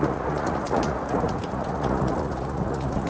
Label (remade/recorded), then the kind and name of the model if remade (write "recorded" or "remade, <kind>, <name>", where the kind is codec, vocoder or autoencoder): remade, vocoder, Vocos